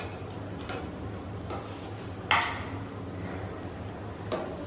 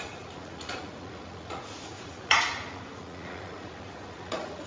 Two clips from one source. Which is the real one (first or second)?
first